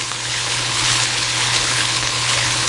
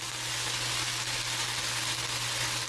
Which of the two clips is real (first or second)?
second